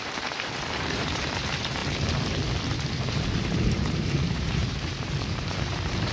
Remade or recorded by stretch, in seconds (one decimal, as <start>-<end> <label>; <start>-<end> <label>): 0.0-1.8 remade; 1.8-3.1 recorded; 3.1-6.1 remade